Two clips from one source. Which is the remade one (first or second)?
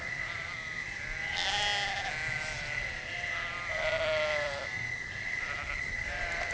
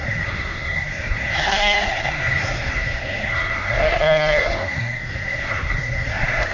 second